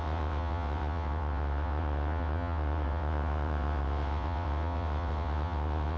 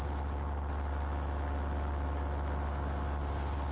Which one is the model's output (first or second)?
first